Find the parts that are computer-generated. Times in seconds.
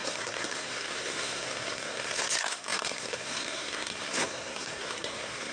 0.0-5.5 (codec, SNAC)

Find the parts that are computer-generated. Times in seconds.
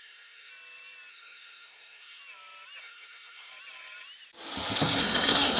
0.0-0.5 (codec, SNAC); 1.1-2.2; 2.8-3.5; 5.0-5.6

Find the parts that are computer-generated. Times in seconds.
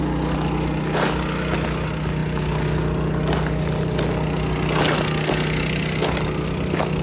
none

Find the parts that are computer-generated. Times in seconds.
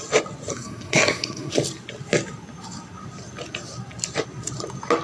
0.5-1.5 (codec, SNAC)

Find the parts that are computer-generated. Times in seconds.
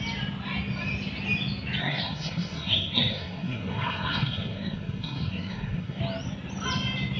1.8-6.0 (codec, SNAC)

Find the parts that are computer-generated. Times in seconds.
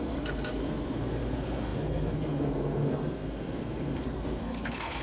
0.0-5.0 (codec, SNAC)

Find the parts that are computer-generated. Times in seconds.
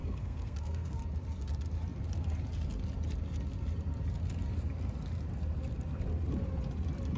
0.0-1.0 (codec, SNAC)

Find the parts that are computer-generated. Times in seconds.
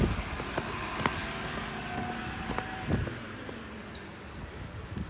none